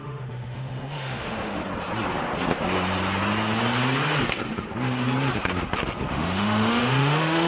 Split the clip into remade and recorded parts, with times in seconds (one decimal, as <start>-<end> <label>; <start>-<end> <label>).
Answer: 0.0-1.6 remade; 1.6-6.1 recorded; 6.1-7.5 remade